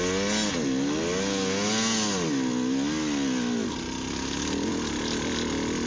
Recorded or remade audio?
recorded